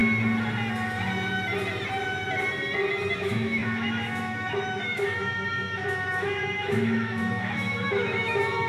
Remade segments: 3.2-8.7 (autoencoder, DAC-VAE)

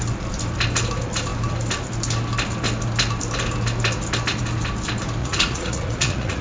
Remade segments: 5.2-6.4 (vocoder, Vocos)

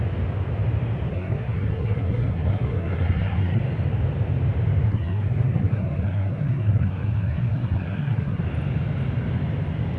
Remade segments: 1.1-3.6 (codec, SNAC); 4.9-8.4

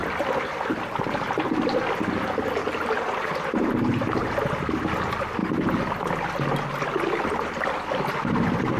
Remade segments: 2.6-3.3 (vocoder, BigVGAN v2)

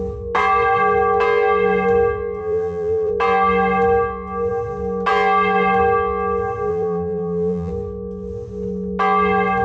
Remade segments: 2.4-3.1 (vocoder, BigVGAN v2); 6.7-7.7

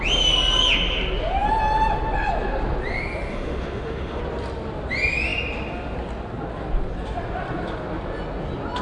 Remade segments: 3.3-4.2 (autoencoder, DAC-VAE)

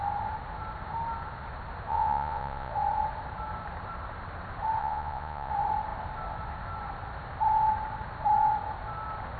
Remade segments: 1.9-2.7 (vocoder, Vocos); 4.8-5.5